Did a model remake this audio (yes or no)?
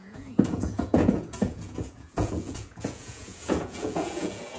yes